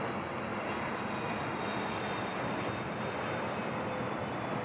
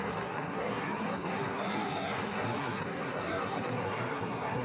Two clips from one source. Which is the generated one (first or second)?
second